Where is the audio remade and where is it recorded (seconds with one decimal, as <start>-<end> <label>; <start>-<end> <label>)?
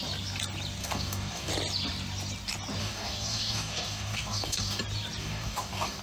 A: 0.0-0.8 recorded; 0.8-1.5 remade; 1.5-2.8 recorded; 2.8-4.8 remade; 4.8-5.2 recorded; 5.2-6.0 remade